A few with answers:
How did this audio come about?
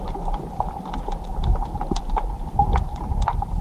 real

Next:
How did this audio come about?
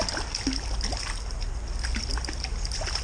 real